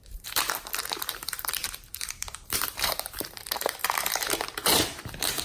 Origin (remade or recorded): remade